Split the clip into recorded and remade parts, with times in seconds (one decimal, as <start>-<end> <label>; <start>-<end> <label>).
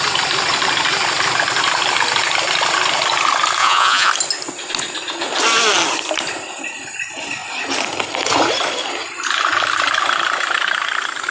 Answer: 0.0-3.6 recorded; 3.6-4.1 remade; 4.1-11.3 recorded